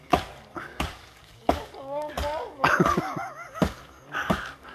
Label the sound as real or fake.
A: fake